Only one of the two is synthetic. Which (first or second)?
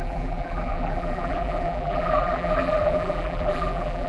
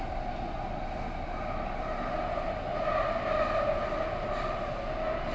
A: first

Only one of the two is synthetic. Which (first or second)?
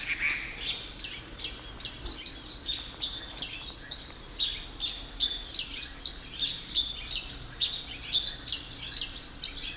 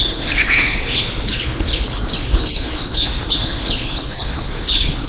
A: second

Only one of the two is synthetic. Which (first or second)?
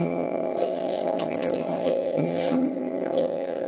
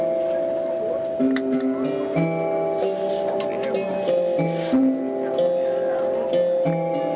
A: first